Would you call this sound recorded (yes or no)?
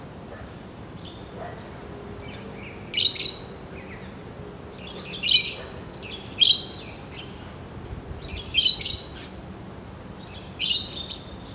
yes